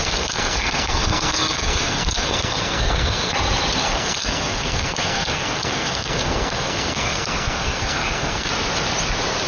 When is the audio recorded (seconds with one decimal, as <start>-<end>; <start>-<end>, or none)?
3.3-3.8; 8.5-9.5